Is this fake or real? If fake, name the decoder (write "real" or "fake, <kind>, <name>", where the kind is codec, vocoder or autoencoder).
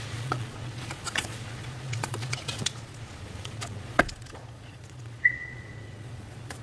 fake, vocoder, Vocos